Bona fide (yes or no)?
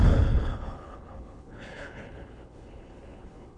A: no